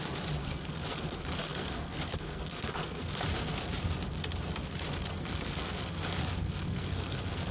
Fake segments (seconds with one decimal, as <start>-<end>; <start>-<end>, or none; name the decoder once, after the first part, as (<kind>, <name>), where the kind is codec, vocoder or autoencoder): 0.4-3.1 (codec, SNAC); 5.1-6.0; 6.4-7.5